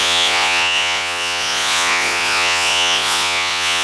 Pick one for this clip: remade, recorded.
remade